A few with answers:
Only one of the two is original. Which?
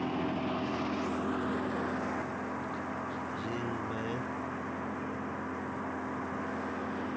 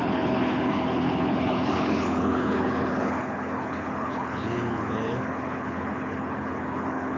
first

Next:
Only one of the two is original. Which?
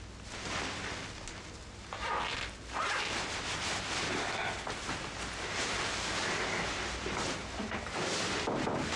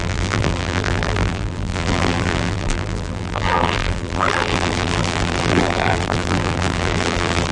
first